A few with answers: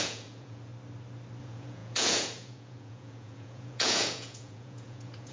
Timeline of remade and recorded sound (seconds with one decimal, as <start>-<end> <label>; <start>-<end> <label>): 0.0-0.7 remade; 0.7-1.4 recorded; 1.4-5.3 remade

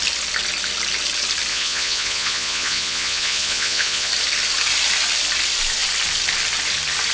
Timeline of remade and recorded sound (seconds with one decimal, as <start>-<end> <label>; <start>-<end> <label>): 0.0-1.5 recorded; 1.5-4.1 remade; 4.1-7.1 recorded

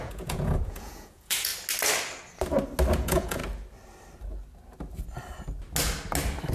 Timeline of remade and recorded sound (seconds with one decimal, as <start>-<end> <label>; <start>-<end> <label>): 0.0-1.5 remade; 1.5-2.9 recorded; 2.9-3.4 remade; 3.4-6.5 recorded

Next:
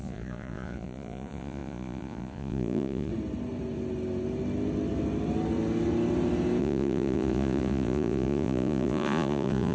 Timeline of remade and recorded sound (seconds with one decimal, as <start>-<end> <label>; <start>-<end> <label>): 0.0-3.1 remade; 3.1-6.6 recorded; 6.6-9.7 remade

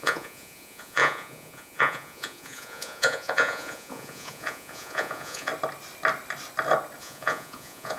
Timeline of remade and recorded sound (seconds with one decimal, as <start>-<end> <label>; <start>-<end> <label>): 0.0-5.5 remade; 5.5-7.0 recorded; 7.0-8.0 remade

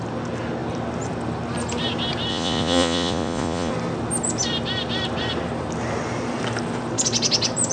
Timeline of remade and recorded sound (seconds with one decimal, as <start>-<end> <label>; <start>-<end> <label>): 0.0-2.3 recorded; 2.3-3.7 remade; 3.7-7.7 recorded

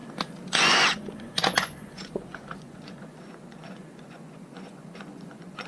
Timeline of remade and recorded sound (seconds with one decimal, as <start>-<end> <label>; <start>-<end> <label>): 0.0-0.6 recorded; 0.6-5.7 remade